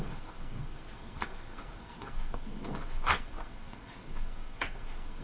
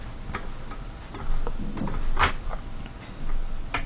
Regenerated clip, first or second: first